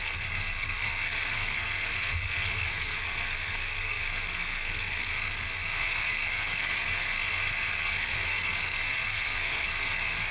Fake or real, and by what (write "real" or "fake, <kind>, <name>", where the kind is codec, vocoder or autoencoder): fake, codec, SNAC